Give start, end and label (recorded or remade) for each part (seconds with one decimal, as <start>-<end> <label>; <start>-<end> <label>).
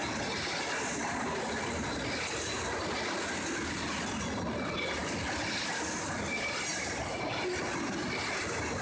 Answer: 0.0-8.8 recorded